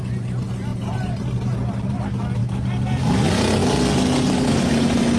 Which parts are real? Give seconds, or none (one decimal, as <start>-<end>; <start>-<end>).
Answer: 0.0-0.7; 2.0-5.2